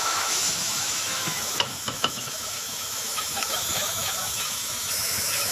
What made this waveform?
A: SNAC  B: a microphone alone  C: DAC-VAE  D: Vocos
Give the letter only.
C